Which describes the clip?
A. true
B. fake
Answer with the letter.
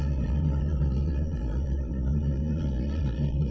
B